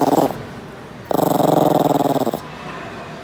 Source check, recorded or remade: recorded